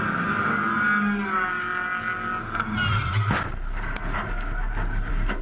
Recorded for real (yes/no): yes